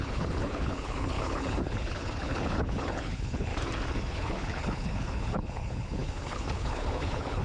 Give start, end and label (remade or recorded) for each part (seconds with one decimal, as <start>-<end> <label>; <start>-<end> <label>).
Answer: 0.0-3.5 remade; 3.5-4.1 recorded; 4.1-7.4 remade